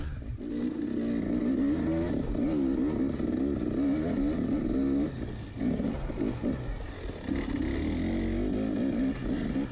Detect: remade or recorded recorded